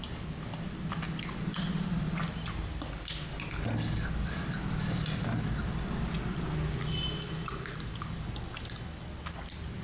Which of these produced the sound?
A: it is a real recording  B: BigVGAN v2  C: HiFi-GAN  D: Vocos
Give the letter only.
A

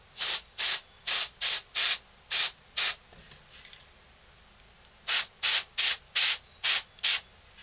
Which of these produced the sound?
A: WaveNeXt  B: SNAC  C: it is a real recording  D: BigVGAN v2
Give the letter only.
C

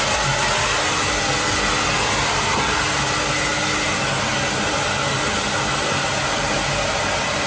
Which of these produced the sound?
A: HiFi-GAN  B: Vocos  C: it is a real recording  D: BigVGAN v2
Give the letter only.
C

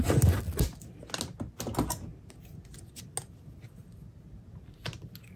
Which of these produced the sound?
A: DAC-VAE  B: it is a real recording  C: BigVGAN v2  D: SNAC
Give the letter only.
B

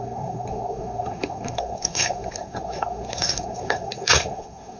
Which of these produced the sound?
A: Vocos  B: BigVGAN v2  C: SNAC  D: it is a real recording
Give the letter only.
C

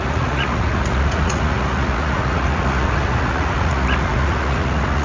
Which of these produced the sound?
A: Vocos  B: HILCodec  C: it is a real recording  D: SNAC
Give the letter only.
A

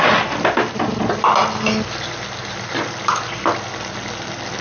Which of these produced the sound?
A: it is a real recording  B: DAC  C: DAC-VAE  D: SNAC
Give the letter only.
A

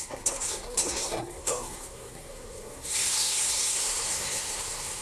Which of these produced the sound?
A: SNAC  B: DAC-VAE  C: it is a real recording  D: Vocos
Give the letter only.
A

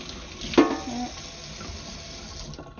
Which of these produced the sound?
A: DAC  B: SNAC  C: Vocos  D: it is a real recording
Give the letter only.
D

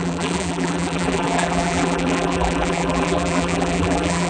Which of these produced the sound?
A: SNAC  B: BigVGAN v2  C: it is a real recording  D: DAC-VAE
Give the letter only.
B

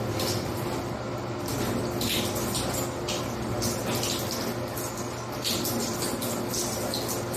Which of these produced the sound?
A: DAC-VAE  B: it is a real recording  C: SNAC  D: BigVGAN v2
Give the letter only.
B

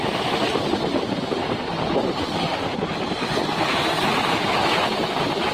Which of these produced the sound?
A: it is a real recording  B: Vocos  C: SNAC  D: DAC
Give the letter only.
A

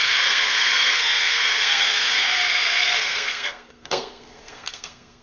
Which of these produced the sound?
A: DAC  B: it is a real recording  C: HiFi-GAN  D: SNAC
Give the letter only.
D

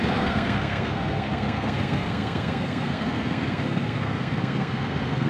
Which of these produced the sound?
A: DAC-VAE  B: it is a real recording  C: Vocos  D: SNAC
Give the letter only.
D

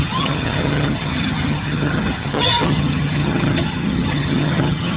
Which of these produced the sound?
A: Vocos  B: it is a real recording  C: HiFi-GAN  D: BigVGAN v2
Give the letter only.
C